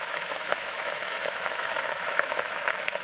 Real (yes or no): no